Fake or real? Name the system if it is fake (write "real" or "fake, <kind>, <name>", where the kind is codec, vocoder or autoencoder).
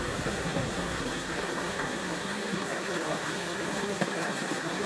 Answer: fake, codec, SNAC